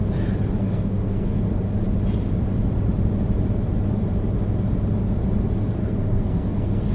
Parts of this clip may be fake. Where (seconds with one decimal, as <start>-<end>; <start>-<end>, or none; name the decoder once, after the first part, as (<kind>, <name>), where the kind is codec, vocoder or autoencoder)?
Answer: 0.6-1.5 (codec, SNAC); 5.8-6.9